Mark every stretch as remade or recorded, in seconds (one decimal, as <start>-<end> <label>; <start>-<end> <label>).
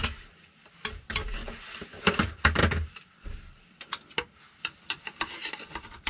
0.0-2.6 remade; 2.6-5.0 recorded; 5.0-6.1 remade